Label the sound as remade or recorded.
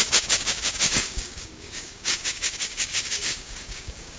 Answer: remade